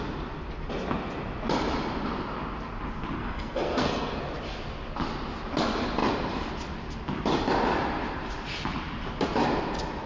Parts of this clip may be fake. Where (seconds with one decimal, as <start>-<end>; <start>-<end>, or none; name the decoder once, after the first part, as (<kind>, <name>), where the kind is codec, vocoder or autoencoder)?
3.2-4.2 (codec, SNAC)